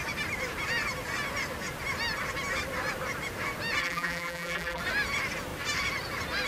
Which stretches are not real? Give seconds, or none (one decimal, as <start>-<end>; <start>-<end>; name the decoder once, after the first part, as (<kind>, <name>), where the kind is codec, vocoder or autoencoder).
3.8-4.8 (vocoder, BigVGAN v2)